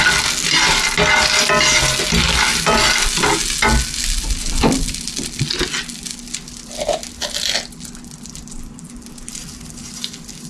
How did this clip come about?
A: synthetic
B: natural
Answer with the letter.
B